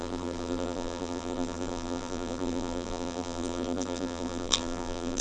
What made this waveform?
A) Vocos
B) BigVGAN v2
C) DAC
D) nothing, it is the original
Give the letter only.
B